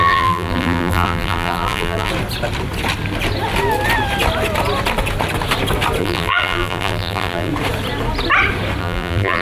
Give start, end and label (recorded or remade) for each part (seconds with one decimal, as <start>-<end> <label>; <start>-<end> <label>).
0.0-2.1 remade; 2.1-6.0 recorded; 6.0-7.5 remade; 7.5-8.8 recorded; 8.8-9.4 remade